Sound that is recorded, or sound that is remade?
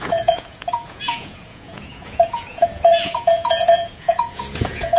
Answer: remade